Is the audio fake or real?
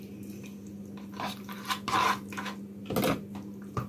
real